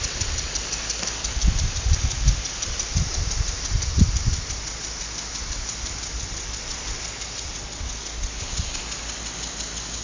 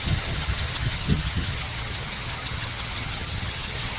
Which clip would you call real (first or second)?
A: first